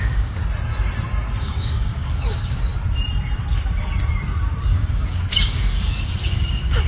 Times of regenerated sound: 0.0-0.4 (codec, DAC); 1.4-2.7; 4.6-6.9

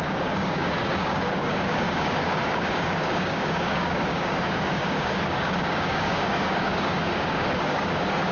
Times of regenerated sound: 0.0-8.3 (codec, DAC)

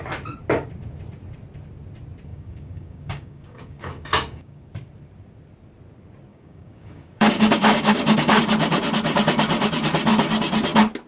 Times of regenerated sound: 2.3-4.7 (codec, DAC); 6.3-8.4

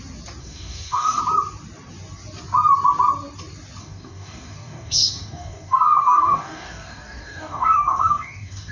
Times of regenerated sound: 0.4-1.2 (codec, DAC); 3.8-8.7

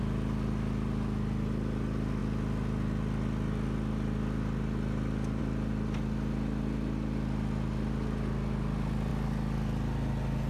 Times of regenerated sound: none

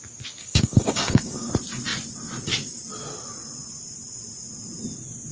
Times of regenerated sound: 0.4-1.5 (codec, DAC)

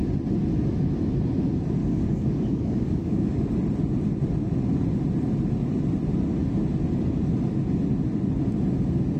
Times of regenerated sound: 1.8-3.5 (codec, DAC)